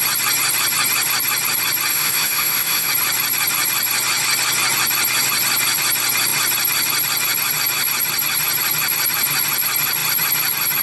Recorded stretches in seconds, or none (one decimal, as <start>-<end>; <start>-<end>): 0.0-1.9; 2.9-10.8